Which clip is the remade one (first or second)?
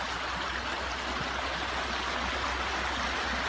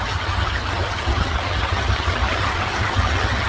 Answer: second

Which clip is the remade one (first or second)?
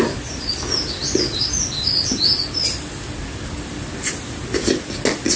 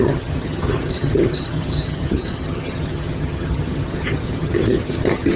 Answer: second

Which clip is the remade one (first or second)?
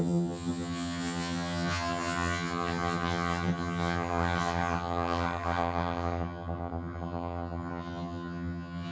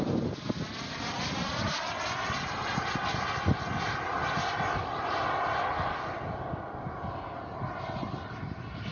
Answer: first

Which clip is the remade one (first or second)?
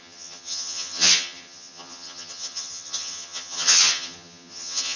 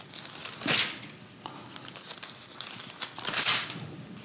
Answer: first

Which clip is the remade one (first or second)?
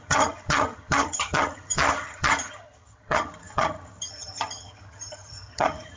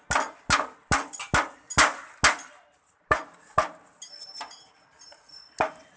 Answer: first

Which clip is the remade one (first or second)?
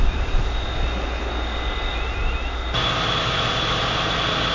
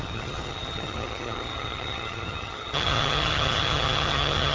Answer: second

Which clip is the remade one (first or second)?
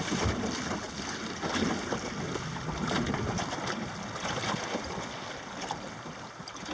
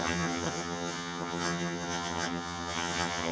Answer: second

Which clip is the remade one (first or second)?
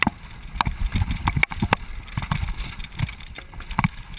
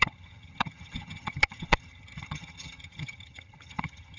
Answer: second